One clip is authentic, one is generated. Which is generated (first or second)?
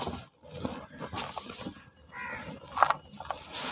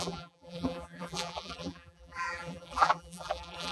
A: second